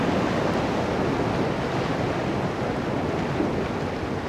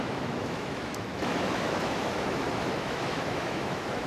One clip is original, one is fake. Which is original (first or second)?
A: first